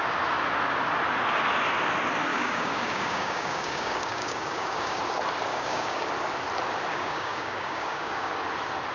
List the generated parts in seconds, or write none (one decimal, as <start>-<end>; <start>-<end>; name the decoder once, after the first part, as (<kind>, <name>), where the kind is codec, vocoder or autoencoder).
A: 2.3-5.0 (codec, DAC); 5.5-6.1; 6.9-8.3